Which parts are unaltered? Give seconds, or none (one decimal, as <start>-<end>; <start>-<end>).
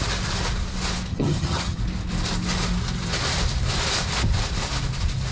0.0-1.1; 1.8-5.3